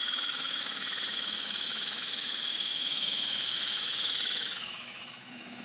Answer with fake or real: fake